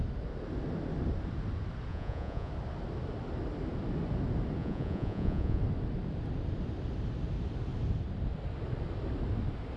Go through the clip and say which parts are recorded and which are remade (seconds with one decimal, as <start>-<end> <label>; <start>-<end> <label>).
0.0-1.9 recorded; 1.9-2.5 remade; 2.5-4.6 recorded; 4.6-5.6 remade; 5.6-9.8 recorded